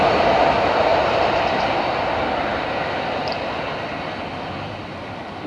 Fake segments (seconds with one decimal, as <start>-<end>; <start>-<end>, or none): none